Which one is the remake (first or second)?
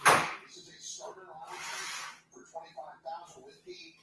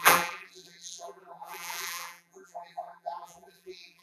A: second